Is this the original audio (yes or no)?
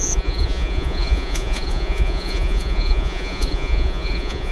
no